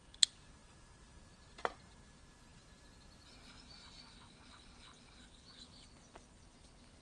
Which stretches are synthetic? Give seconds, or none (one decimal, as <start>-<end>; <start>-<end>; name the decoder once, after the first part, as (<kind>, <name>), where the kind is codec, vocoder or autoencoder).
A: 0.6-1.3 (vocoder, BigVGAN v2)